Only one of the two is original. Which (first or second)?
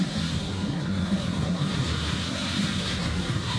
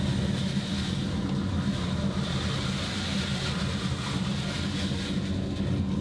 second